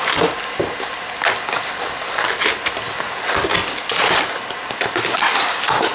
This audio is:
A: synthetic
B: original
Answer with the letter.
B